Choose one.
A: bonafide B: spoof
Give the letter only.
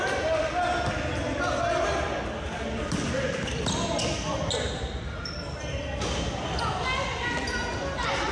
A